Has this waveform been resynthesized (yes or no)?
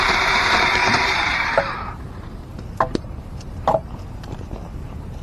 yes